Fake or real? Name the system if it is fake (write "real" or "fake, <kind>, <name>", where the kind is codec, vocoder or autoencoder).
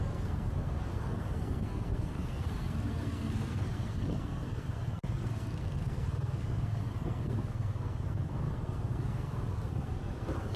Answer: fake, codec, SNAC